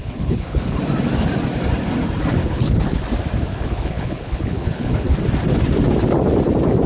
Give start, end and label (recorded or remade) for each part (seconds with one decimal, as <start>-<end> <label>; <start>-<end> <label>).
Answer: 0.0-0.8 remade; 0.8-2.4 recorded; 2.4-3.0 remade; 3.0-3.5 recorded; 3.5-5.2 remade; 5.2-6.9 recorded